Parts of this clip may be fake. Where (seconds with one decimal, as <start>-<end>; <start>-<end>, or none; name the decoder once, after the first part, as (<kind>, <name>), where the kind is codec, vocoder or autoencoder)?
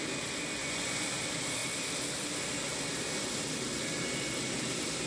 0.6-1.1 (vocoder, Vocos)